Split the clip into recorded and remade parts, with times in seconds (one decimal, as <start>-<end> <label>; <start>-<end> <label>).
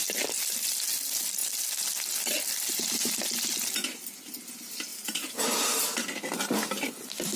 0.0-7.4 recorded